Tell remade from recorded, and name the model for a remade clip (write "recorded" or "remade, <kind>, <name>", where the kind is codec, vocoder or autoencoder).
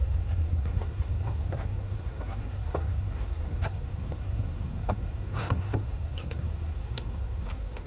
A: remade, codec, SNAC